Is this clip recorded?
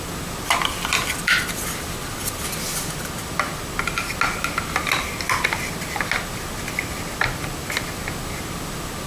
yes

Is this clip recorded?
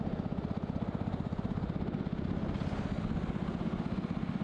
yes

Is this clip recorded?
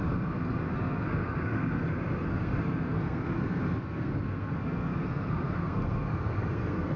no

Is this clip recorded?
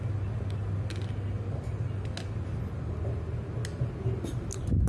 yes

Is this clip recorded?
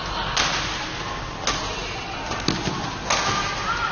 yes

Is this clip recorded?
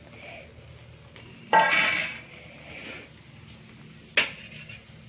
yes